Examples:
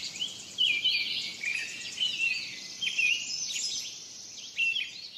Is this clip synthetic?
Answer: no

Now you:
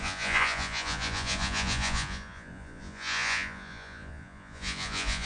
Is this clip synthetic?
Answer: yes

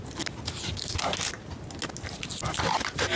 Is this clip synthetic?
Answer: no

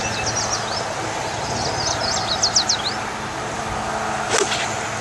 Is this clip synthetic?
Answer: no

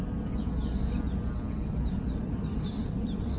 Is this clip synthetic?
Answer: no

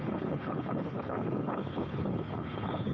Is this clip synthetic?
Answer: yes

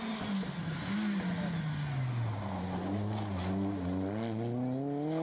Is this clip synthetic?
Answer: no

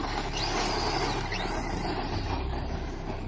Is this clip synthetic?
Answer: no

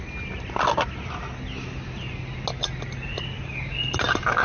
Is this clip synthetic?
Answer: no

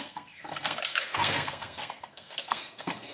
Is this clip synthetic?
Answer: yes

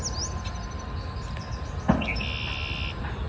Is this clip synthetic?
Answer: no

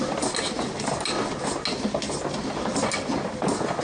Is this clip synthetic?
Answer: no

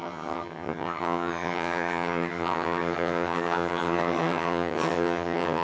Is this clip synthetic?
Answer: yes